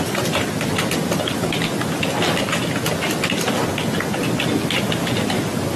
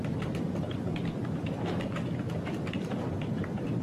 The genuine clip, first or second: first